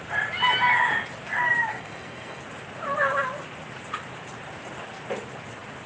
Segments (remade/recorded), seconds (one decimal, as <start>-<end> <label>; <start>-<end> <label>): 0.0-1.7 recorded; 1.7-2.4 remade; 2.4-5.9 recorded